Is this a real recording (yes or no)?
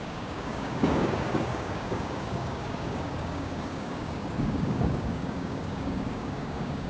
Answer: no